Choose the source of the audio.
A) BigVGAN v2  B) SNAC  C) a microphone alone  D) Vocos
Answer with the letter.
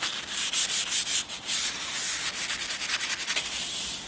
C